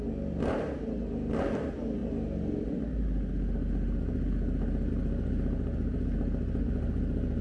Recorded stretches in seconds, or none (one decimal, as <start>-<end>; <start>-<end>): 0.0-7.4

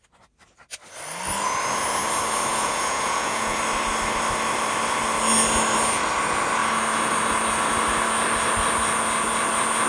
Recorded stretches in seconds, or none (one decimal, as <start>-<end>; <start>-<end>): 0.0-2.5; 3.6-9.9